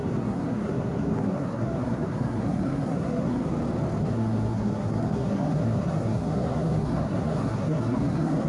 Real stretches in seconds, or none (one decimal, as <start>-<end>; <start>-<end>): 3.5-4.0